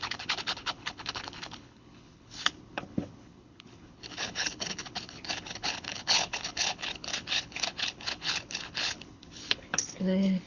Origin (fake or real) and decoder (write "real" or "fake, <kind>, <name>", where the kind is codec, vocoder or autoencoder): fake, codec, HILCodec